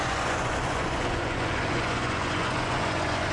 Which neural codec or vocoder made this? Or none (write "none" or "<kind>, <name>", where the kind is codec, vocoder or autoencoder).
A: vocoder, Vocos